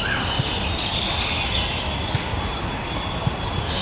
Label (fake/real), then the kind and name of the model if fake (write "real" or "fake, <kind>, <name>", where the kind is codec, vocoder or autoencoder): real